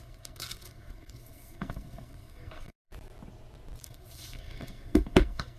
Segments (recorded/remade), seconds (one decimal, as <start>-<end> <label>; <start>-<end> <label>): 0.0-2.9 remade; 2.9-3.8 recorded; 3.8-5.6 remade